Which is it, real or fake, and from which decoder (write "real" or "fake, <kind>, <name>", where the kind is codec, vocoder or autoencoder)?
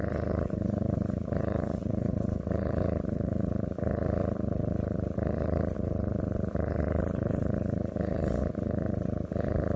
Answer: fake, vocoder, Vocos